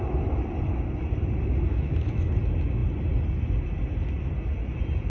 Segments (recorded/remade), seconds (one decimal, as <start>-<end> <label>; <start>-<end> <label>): 0.0-1.7 recorded; 1.7-2.3 remade; 2.3-5.1 recorded